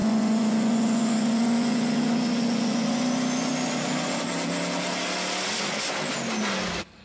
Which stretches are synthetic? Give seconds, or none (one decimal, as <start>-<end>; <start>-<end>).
0.0-4.2